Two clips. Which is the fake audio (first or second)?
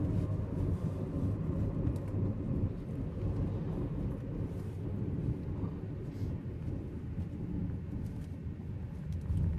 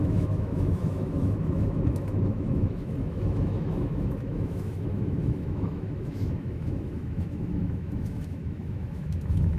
second